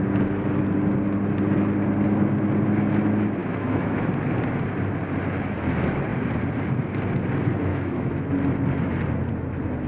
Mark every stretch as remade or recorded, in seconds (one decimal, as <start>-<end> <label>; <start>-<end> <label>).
0.0-3.4 recorded; 3.4-4.1 remade; 4.1-7.7 recorded; 7.7-8.3 remade; 8.3-9.9 recorded